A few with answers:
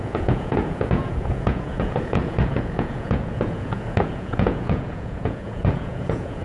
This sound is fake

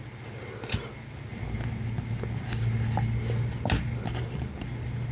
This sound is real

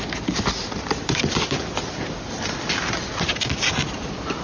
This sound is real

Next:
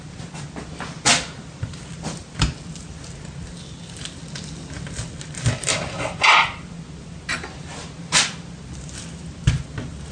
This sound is real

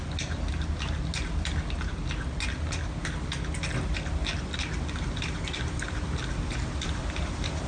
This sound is real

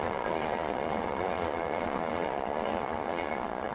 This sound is fake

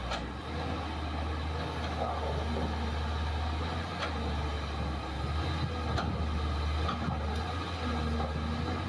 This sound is real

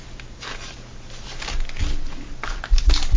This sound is real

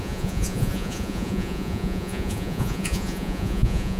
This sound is fake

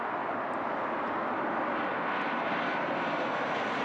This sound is real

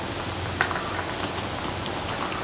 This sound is real